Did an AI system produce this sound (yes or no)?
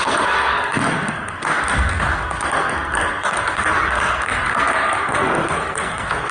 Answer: yes